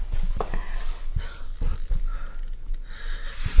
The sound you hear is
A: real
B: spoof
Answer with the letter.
A